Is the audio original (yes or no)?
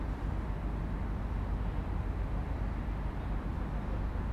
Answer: yes